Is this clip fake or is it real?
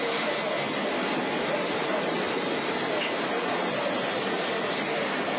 real